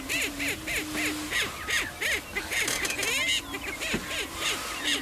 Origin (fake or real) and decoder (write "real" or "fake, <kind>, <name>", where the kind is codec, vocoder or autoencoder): real